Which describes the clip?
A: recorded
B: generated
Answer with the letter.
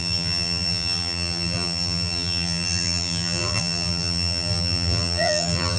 B